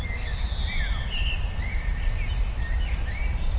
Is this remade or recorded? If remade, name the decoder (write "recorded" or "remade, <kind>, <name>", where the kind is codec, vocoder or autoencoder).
recorded